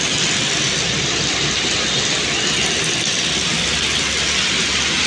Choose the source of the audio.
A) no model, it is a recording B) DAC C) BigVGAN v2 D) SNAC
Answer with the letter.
A